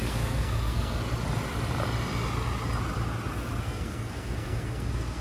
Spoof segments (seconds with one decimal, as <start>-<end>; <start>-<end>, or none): 0.0-1.0; 3.6-5.2